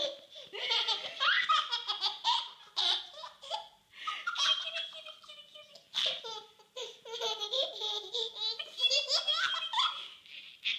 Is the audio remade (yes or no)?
no